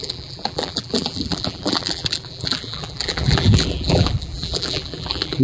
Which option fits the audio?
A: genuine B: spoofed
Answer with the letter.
B